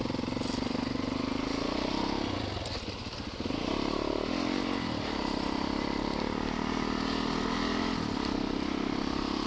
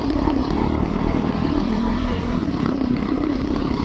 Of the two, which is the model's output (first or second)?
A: second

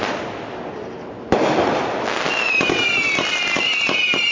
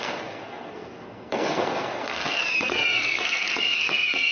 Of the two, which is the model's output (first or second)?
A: second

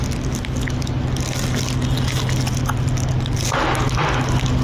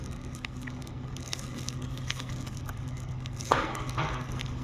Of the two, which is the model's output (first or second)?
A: second